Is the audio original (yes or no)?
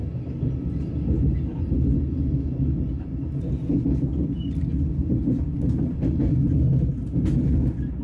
yes